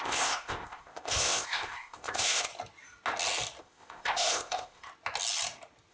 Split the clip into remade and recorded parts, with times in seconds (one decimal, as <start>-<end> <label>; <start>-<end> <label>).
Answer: 0.0-2.5 remade; 2.5-3.6 recorded; 3.6-4.9 remade; 4.9-5.9 recorded